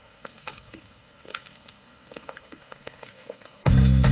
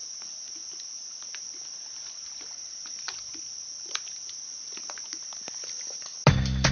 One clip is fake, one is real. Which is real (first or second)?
second